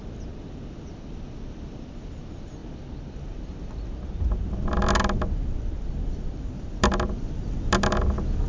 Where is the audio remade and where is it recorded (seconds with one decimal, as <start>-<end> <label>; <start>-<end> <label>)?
0.0-8.5 recorded